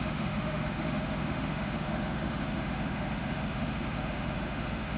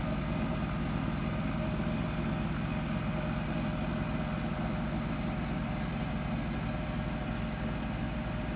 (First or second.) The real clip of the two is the second